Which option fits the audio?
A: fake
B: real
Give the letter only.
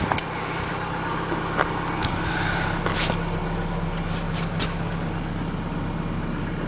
B